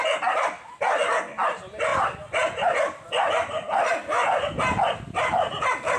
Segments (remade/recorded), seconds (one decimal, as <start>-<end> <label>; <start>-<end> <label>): 0.0-6.0 recorded